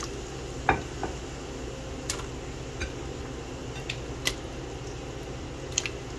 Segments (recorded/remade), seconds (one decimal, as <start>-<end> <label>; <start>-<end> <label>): 0.0-6.2 recorded